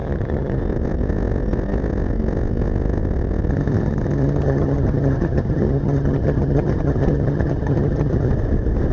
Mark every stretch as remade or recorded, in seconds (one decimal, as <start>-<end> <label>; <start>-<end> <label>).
0.0-0.6 remade; 0.6-3.5 recorded; 3.5-8.3 remade; 8.3-8.9 recorded